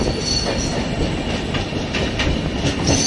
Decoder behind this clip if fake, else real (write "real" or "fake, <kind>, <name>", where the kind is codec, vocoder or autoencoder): real